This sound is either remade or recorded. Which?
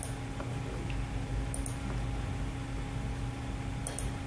recorded